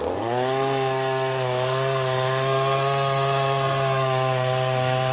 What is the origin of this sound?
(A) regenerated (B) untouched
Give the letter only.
A